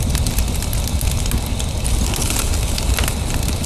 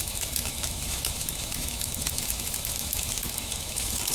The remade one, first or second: second